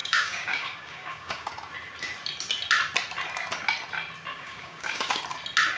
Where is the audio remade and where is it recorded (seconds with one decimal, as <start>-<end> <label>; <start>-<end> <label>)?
0.0-1.5 remade; 1.5-4.3 recorded; 4.3-5.2 remade; 5.2-5.8 recorded